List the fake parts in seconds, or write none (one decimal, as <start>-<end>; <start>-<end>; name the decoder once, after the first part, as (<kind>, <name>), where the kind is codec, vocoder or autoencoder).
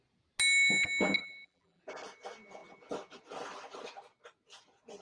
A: 1.2-1.8 (vocoder, BigVGAN v2)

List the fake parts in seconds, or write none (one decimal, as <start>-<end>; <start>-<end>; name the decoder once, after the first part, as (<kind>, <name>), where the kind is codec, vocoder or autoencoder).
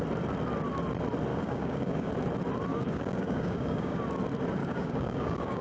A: 1.3-2.1 (codec, DAC); 2.7-4.0; 4.6-5.6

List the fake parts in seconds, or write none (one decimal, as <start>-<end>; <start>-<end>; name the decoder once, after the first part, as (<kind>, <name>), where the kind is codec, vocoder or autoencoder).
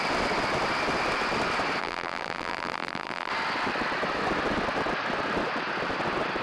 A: 1.8-3.3 (vocoder, BigVGAN v2)